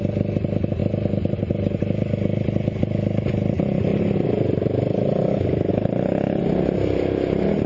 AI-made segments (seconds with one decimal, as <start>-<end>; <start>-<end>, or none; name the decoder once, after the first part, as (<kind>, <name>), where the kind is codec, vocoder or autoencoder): none